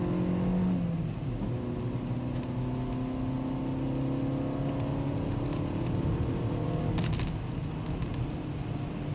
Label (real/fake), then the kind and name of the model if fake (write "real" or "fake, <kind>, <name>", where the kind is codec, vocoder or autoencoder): real